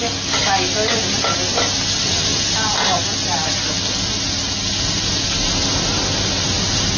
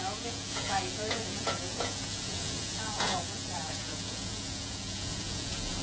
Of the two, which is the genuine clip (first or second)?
first